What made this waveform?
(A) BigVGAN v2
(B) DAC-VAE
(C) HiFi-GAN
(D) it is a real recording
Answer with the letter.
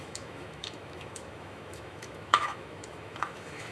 B